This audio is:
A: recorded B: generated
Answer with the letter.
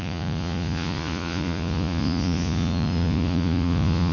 B